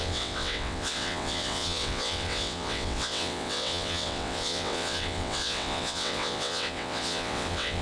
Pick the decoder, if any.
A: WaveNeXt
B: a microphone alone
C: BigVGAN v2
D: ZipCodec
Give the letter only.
A